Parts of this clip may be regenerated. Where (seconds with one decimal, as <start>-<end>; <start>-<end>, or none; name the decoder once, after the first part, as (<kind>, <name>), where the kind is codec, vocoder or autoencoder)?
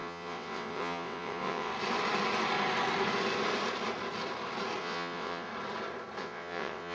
0.0-1.7 (vocoder, WaveNeXt); 4.8-5.5; 6.2-6.9